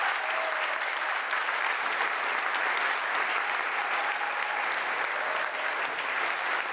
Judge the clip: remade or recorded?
recorded